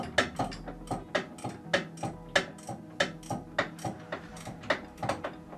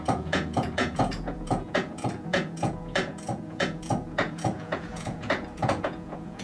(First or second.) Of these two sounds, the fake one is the second